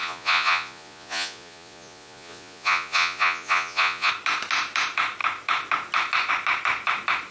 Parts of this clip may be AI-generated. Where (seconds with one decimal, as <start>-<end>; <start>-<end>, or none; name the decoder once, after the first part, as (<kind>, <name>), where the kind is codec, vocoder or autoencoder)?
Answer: 0.0-4.1 (vocoder, Vocos)